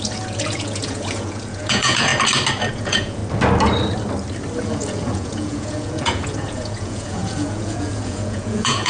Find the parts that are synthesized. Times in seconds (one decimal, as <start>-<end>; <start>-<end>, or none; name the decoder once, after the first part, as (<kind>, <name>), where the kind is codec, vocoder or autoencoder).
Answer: 0.0-2.1 (vocoder, Vocos); 2.7-3.2; 4.6-8.9